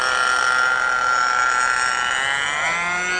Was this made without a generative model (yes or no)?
yes